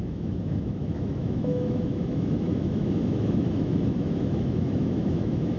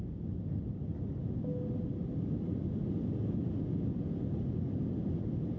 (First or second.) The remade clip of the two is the first